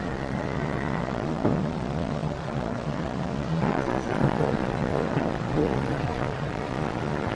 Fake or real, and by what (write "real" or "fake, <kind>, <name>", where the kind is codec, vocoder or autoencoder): fake, vocoder, Vocos